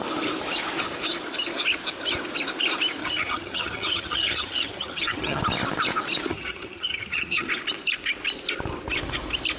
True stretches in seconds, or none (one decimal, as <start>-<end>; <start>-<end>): 0.0-3.0; 5.4-6.3; 7.5-9.6